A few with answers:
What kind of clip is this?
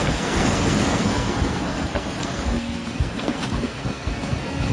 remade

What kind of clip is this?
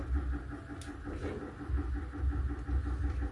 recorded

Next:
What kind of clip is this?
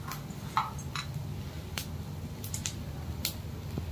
recorded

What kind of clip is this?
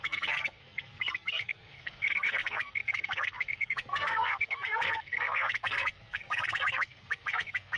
remade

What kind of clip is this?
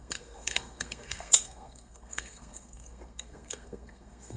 remade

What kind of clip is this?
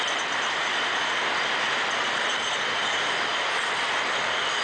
recorded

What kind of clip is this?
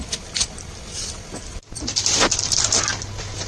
recorded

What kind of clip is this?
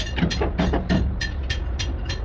recorded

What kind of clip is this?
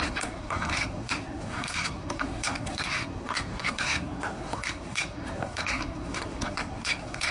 remade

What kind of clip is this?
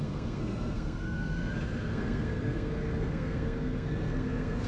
remade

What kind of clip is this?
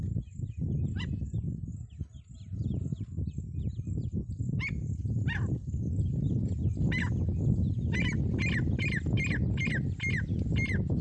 recorded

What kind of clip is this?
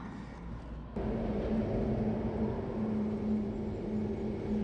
recorded